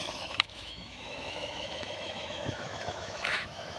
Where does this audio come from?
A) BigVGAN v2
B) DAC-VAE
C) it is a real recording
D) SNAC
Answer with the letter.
B